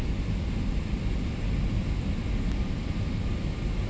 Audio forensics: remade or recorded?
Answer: recorded